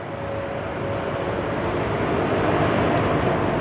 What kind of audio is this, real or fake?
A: real